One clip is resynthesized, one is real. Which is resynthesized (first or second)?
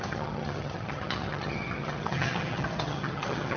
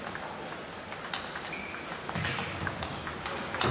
first